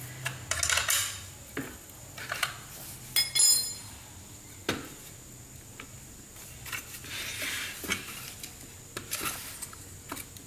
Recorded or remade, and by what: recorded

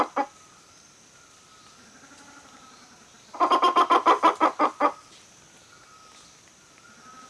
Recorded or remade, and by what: recorded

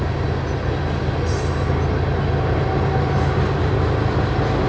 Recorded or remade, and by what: recorded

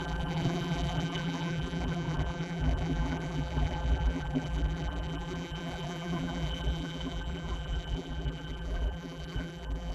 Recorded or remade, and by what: remade, vocoder, BigVGAN v2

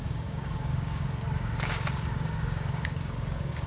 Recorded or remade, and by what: remade, codec, DAC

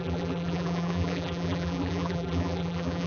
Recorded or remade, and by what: remade, vocoder, BigVGAN v2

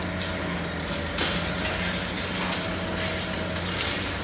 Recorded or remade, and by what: recorded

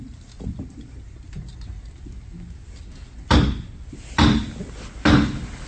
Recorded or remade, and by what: recorded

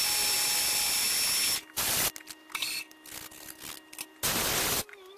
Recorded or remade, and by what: recorded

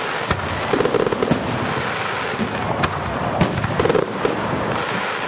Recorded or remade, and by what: recorded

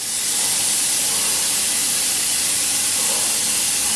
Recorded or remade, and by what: recorded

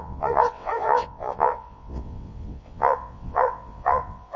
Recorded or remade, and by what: remade, vocoder, WaveNeXt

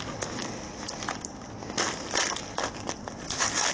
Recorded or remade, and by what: recorded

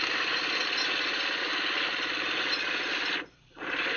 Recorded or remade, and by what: recorded